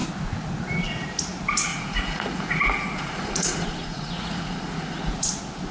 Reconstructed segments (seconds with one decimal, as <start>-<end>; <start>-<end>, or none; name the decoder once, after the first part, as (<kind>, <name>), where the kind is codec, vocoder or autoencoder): 1.7-5.1 (vocoder, Vocos)